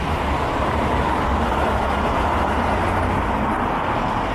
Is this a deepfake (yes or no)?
no